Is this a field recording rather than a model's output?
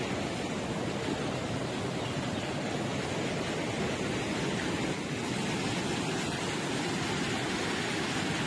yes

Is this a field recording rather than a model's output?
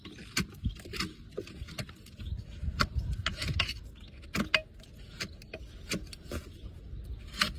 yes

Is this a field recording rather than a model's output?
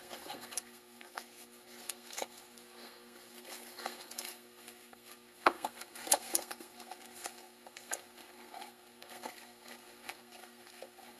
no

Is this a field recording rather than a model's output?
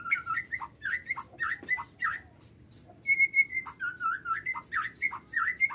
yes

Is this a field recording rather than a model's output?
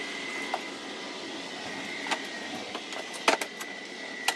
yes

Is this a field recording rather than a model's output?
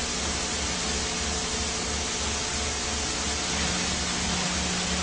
yes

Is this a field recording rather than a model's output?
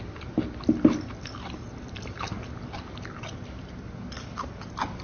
yes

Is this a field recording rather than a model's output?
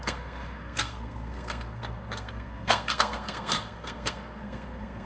no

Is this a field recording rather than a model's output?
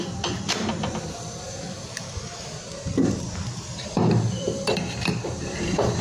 no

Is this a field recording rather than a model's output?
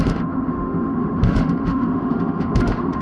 no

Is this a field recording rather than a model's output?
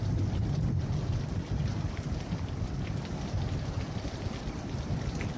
yes